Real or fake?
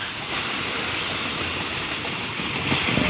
real